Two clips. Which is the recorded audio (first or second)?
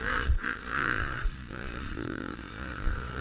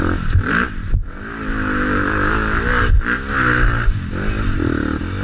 second